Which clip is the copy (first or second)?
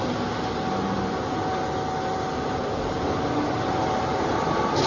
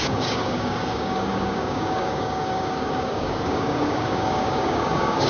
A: second